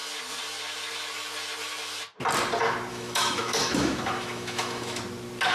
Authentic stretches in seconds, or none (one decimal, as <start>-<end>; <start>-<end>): 0.0-2.9; 5.0-5.5